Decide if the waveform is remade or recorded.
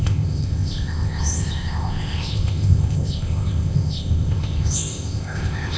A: remade